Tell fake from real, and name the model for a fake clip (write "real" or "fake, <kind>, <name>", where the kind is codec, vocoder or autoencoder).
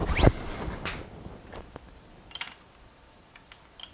real